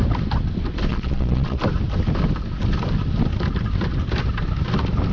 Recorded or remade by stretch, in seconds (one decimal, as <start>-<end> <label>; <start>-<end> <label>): 0.0-0.9 recorded; 0.9-1.6 remade; 1.6-5.1 recorded